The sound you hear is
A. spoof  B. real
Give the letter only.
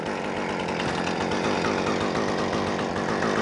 B